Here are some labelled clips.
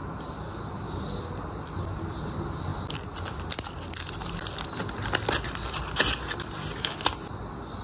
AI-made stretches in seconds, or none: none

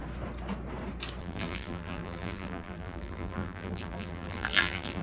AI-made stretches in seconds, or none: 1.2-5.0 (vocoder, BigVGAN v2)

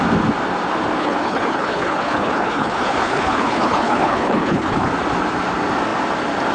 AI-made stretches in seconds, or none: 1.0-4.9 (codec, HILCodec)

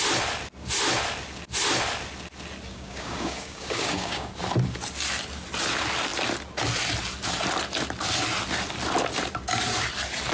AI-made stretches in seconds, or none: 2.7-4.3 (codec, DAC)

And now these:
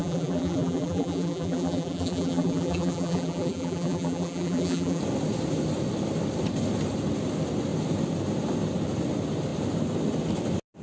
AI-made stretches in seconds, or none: 0.0-5.0 (vocoder, BigVGAN v2)

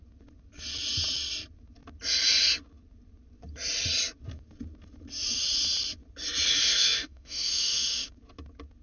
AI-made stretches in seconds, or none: 6.5-8.1 (autoencoder, DAC-VAE)

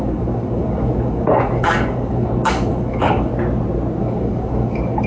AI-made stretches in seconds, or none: 0.0-3.3 (codec, DAC); 4.0-5.1

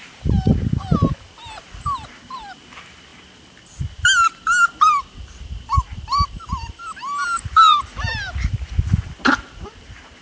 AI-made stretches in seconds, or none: none